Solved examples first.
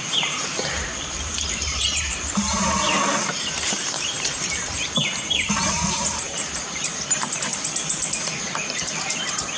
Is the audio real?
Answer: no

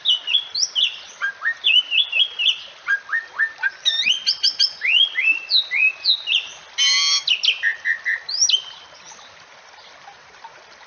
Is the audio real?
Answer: yes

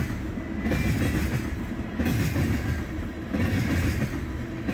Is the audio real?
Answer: yes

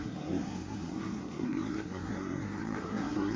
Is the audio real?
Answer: no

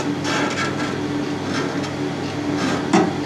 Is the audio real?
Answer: yes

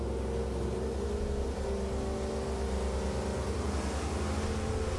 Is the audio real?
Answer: yes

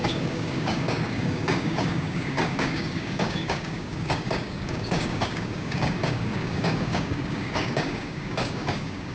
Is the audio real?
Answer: no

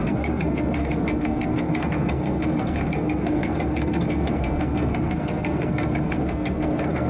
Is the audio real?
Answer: no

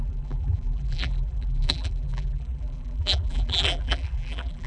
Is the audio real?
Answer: no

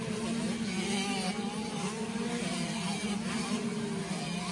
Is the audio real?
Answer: yes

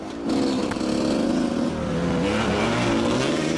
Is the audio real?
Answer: yes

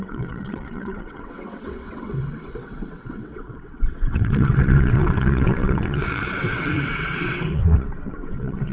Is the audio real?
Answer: no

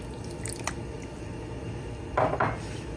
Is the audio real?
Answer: yes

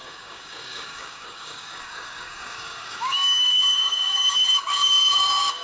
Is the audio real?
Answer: no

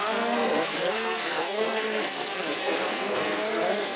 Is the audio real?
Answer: no